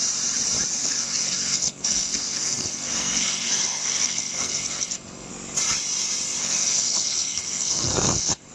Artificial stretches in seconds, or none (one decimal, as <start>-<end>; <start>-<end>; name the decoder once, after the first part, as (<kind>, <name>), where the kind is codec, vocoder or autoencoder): 0.8-5.3 (codec, SNAC); 6.4-8.5